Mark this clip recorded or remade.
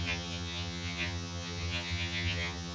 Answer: remade